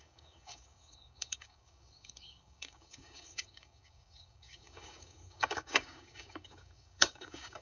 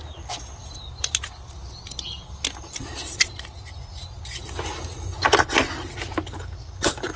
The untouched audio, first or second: second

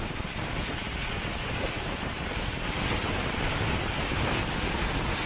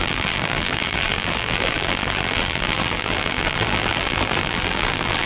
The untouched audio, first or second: first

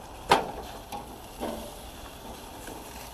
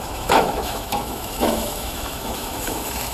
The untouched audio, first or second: first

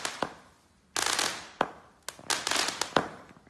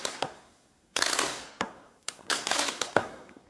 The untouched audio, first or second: first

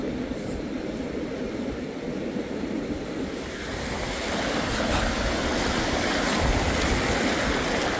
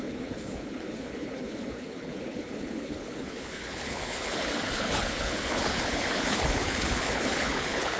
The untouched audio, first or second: first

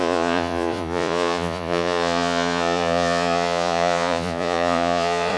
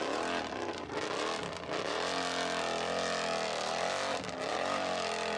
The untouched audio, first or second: second